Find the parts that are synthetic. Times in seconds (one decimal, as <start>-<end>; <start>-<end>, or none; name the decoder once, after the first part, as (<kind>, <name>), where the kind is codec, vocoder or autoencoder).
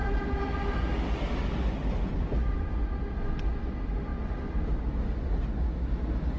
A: 0.0-0.8 (vocoder, BigVGAN v2)